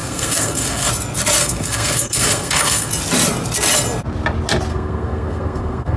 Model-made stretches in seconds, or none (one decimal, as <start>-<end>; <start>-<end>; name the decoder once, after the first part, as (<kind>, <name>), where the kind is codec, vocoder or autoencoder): 0.0-0.9 (codec, SNAC); 1.4-2.9; 4.7-6.0